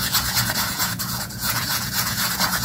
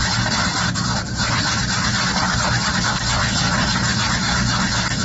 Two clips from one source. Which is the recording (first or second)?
second